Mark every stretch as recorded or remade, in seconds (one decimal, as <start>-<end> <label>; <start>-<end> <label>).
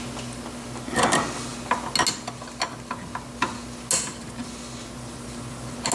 0.0-5.9 recorded